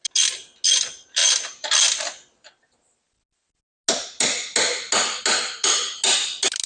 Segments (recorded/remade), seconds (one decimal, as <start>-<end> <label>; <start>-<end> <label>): 0.0-6.7 recorded